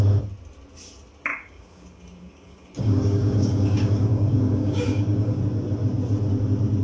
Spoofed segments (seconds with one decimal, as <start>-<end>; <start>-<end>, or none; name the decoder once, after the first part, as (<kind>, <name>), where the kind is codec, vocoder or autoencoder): 1.3-5.4 (codec, DAC)